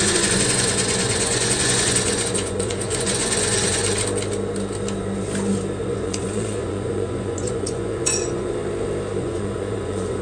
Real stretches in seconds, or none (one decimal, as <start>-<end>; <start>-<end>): 3.8-5.8; 8.6-9.2